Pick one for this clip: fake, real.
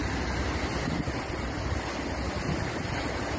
real